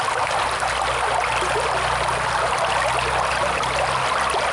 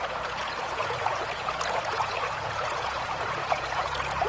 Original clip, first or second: first